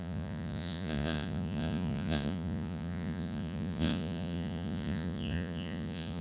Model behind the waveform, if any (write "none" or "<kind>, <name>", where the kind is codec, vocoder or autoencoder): vocoder, Vocos